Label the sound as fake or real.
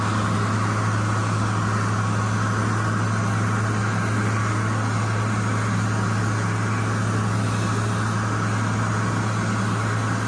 real